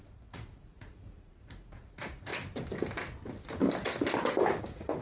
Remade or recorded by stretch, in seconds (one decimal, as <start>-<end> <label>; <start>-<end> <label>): 0.0-2.3 remade; 2.3-4.6 recorded; 4.6-5.0 remade